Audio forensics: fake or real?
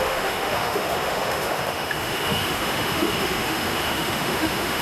fake